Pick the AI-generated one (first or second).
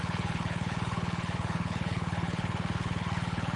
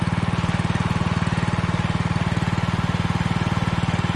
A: first